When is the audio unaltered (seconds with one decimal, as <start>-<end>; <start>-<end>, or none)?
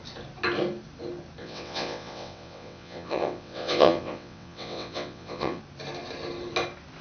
0.0-1.4; 5.6-7.0